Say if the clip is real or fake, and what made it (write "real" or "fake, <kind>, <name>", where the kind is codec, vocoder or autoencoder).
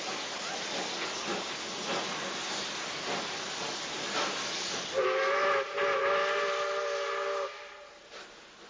real